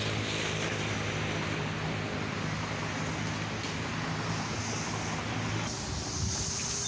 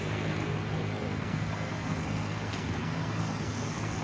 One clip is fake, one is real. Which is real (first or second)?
first